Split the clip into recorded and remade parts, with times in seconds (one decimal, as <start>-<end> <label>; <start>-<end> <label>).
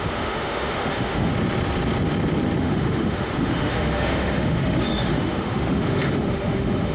0.0-1.3 remade; 1.3-2.6 recorded; 2.6-6.9 remade